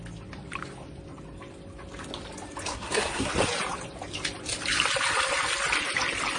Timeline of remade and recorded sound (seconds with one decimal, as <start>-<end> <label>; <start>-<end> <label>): 0.0-2.7 recorded; 2.7-3.3 remade; 3.3-6.4 recorded